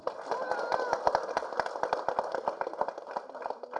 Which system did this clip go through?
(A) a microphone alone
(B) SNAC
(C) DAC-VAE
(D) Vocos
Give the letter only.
A